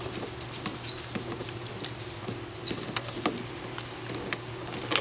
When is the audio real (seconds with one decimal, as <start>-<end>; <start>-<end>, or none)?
0.0-5.0